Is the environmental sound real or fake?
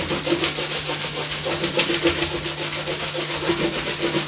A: real